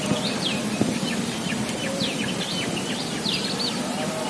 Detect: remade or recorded remade